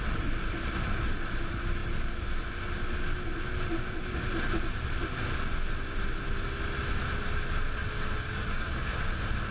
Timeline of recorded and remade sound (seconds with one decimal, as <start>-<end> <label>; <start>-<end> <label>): 0.0-7.8 recorded; 7.8-9.0 remade; 9.0-9.5 recorded